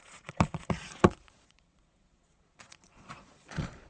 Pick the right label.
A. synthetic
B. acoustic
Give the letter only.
A